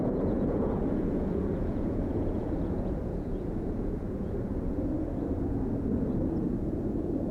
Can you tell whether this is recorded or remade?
remade